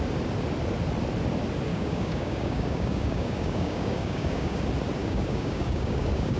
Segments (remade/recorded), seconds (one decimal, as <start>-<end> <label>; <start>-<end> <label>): 0.0-1.7 recorded; 1.7-4.6 remade; 4.6-5.0 recorded; 5.0-6.4 remade